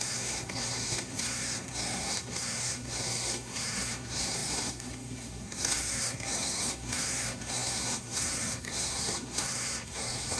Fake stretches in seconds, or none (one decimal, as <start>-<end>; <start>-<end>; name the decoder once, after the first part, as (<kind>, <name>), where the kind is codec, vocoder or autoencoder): 0.0-10.4 (codec, SNAC)